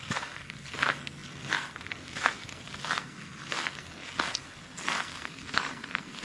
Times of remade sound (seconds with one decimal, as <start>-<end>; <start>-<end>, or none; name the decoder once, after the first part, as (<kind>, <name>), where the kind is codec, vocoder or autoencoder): 0.0-6.2 (codec, SNAC)